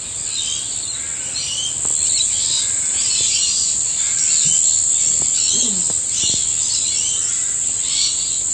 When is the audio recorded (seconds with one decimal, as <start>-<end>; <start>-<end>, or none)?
0.0-8.5

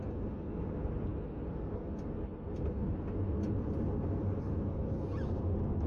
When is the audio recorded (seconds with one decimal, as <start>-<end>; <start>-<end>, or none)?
0.0-5.9

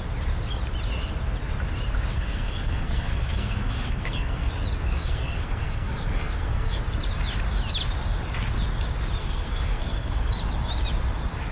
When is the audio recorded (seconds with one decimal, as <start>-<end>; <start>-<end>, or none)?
0.0-2.1; 4.5-4.9; 6.8-9.2; 10.3-11.5

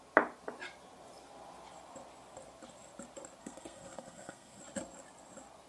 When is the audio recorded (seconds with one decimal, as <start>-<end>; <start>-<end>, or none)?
0.0-3.4; 4.6-5.7

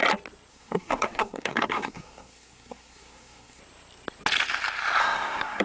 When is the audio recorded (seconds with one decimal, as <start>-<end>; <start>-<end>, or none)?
0.0-0.5; 3.6-5.0

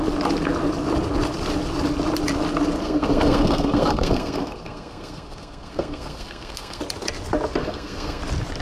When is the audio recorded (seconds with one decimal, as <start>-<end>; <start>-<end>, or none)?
0.0-2.8; 6.8-7.6; 8.2-8.6